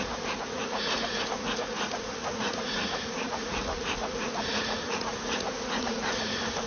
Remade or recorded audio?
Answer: remade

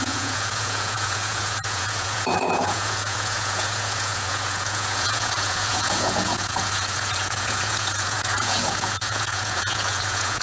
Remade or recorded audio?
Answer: remade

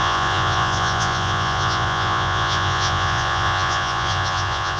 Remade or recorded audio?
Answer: remade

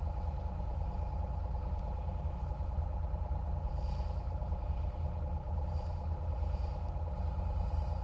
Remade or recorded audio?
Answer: recorded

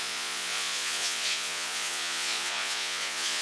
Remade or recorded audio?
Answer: remade